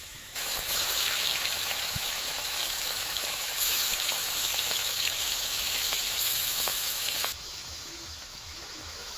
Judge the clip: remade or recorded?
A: remade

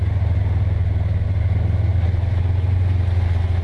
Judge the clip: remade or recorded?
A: recorded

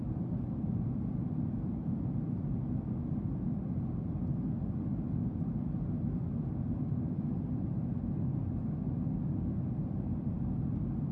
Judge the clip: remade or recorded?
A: recorded